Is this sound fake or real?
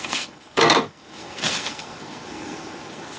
fake